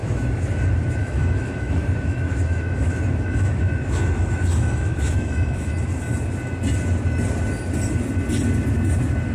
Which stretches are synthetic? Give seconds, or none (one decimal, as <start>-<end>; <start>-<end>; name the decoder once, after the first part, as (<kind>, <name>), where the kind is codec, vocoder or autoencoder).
0.0-0.5 (autoencoder, DAC-VAE); 1.0-5.7

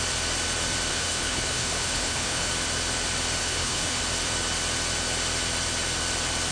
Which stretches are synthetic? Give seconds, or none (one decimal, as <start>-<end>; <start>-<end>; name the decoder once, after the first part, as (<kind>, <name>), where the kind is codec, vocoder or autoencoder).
0.9-2.5 (codec, HILCodec); 3.4-4.0

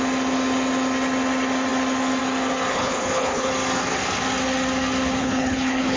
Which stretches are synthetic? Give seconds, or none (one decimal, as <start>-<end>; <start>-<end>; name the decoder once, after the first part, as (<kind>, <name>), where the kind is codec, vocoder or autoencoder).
2.7-3.5 (codec, HILCodec); 5.2-6.0

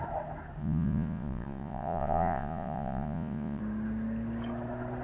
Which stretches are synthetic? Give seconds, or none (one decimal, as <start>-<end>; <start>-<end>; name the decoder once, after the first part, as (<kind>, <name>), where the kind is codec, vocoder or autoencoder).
0.6-3.6 (vocoder, Vocos)

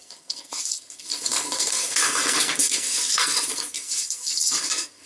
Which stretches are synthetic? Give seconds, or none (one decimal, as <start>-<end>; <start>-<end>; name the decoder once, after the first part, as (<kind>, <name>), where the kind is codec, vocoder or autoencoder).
0.0-5.1 (codec, SNAC)

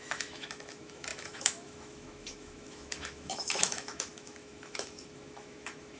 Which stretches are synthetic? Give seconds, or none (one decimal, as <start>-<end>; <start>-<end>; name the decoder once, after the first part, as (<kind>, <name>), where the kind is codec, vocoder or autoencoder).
0.0-6.0 (autoencoder, DAC-VAE)